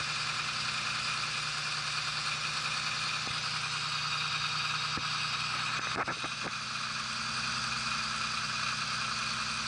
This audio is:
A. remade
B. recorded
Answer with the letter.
B